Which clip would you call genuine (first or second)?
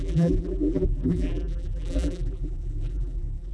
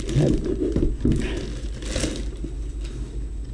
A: second